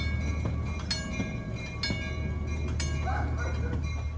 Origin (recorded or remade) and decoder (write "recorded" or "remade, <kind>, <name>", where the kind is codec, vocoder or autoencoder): recorded